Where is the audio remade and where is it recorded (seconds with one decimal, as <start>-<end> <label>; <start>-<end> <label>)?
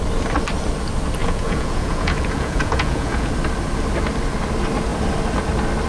0.0-1.2 recorded; 1.2-3.3 remade; 3.3-5.9 recorded